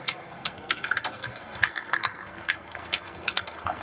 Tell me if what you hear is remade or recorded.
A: remade